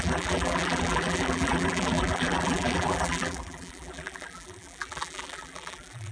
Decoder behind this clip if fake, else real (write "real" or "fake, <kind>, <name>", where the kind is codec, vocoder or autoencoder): fake, vocoder, BigVGAN v2